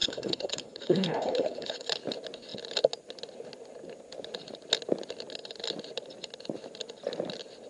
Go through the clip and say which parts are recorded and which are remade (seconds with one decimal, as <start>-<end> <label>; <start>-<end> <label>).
0.0-1.9 remade; 1.9-7.7 recorded